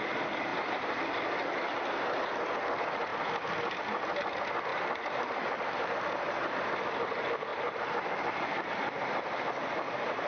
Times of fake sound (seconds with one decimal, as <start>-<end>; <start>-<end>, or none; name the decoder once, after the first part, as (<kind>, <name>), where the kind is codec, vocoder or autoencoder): 0.5-1.0 (vocoder, BigVGAN v2); 4.7-6.7; 7.5-8.7